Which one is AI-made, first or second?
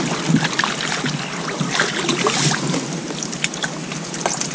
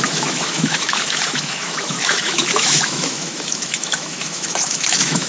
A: second